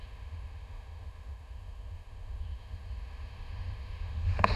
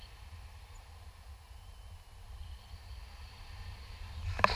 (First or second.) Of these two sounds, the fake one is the first